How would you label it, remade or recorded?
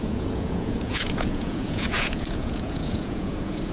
remade